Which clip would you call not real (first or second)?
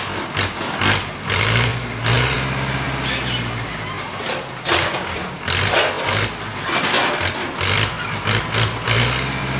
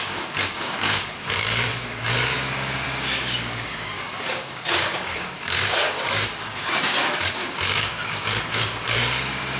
second